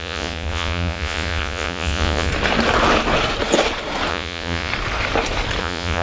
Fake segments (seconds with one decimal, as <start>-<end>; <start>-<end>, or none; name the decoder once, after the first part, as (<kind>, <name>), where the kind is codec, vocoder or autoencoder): 0.0-2.3 (vocoder, Vocos); 4.1-4.7; 5.6-6.0